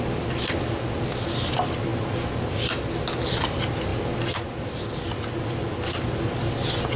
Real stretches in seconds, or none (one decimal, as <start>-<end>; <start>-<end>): 0.0-7.0